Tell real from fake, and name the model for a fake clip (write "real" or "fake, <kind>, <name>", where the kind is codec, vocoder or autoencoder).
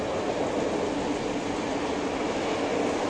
real